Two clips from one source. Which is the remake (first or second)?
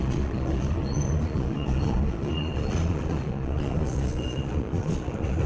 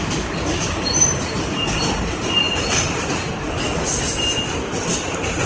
first